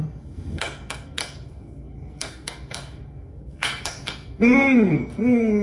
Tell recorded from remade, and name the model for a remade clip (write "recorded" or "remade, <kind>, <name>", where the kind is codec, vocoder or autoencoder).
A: remade, codec, SNAC